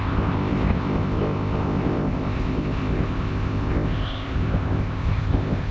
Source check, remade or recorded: remade